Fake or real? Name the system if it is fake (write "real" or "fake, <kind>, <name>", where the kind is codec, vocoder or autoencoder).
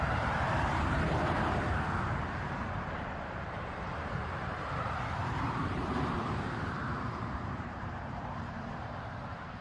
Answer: fake, vocoder, BigVGAN v2